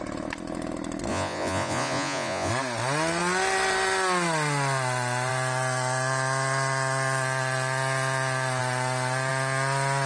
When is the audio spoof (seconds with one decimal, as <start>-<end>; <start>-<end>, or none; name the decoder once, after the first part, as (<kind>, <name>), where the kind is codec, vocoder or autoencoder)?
1.1-2.5 (vocoder, Vocos)